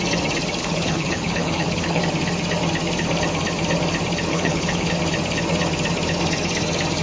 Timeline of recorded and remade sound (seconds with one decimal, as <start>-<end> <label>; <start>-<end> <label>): 0.0-0.6 recorded; 0.6-2.0 remade; 2.0-4.3 recorded; 4.3-4.9 remade; 4.9-7.0 recorded

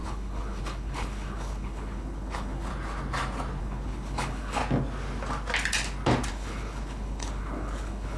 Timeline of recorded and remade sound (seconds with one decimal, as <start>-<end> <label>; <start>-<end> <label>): 0.0-2.7 remade; 2.7-3.6 recorded; 3.6-4.6 remade; 4.6-6.3 recorded; 6.3-8.2 remade